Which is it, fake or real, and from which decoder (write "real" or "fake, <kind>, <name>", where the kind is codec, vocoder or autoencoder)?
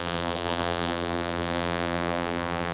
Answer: fake, vocoder, BigVGAN v2